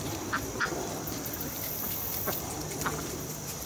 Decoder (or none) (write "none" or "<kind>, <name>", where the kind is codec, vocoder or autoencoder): vocoder, BigVGAN v2